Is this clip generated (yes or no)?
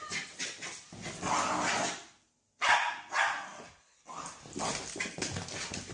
yes